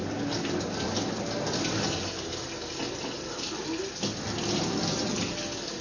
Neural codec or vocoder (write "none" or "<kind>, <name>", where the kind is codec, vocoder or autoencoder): none